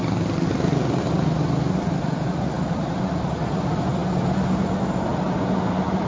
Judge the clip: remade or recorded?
recorded